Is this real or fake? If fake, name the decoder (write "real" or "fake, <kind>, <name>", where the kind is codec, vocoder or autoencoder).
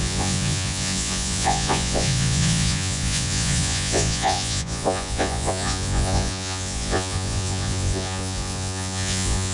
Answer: fake, vocoder, Vocos